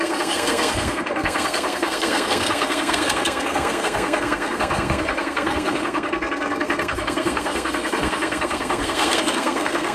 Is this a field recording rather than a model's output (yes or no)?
no